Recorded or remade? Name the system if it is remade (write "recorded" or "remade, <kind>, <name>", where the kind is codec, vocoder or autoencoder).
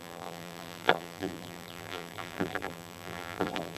remade, vocoder, BigVGAN v2